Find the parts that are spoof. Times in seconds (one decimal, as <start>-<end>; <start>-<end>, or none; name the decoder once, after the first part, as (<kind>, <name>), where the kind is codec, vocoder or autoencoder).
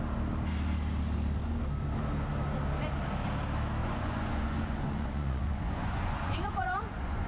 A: 3.8-7.3 (vocoder, Vocos)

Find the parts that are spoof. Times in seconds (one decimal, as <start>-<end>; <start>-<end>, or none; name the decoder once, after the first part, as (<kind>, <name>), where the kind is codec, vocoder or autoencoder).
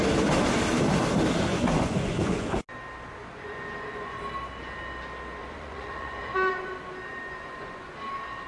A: 1.5-2.6 (vocoder, Vocos); 3.2-4.2; 5.4-6.6; 7.1-7.9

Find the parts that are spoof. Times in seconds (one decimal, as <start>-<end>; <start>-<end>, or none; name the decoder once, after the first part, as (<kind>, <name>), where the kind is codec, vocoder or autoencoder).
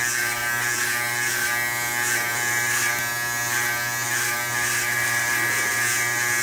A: none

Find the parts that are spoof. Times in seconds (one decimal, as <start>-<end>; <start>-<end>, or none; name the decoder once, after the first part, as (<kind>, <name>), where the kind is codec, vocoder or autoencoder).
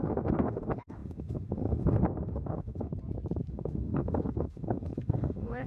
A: 0.0-2.9 (autoencoder, DAC-VAE); 3.5-5.7